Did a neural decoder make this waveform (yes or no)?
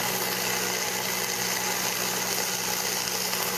no